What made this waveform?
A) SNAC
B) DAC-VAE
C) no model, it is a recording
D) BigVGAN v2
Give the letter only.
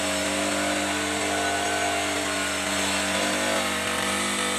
C